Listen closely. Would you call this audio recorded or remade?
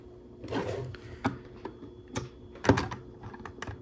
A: recorded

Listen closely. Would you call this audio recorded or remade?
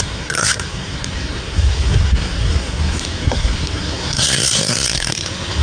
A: remade